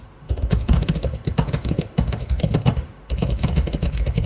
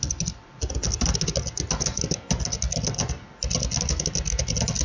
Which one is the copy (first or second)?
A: first